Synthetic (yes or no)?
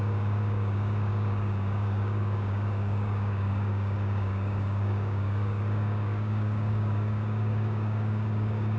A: yes